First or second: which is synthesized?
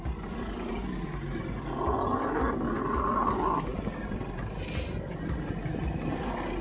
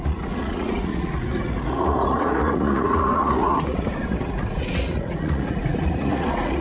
second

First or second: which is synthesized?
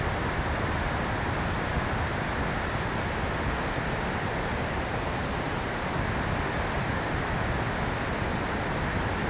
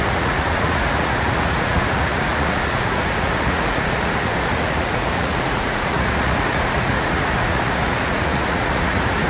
second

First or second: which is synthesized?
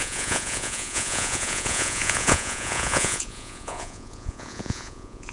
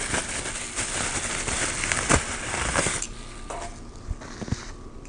first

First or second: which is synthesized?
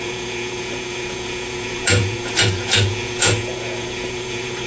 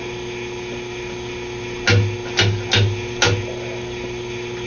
first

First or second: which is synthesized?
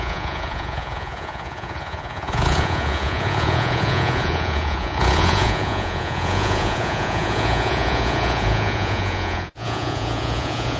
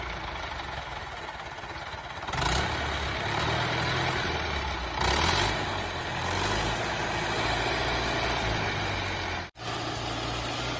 first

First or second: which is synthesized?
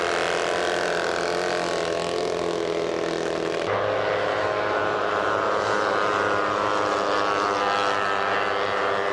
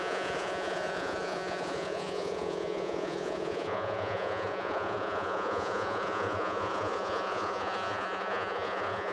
second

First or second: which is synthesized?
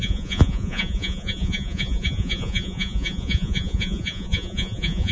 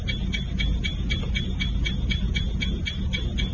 first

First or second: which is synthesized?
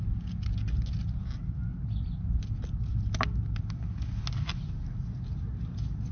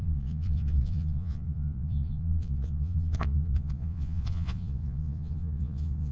second